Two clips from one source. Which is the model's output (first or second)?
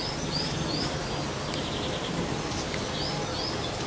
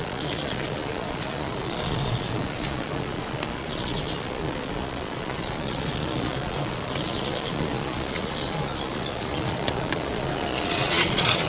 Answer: second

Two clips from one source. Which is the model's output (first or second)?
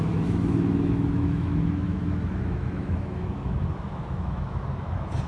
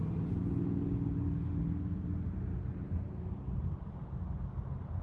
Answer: first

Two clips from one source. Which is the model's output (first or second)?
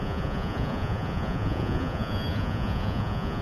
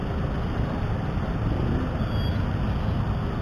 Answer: first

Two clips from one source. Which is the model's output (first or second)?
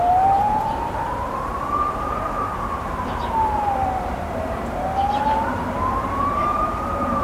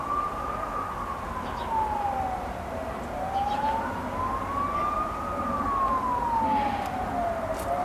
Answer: first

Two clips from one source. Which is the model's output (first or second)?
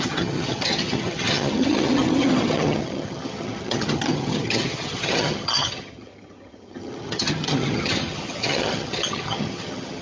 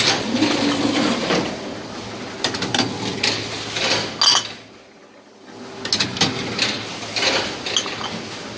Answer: first